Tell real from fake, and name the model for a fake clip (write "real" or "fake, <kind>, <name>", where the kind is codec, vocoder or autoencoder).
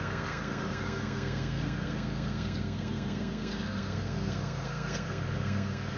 fake, codec, SNAC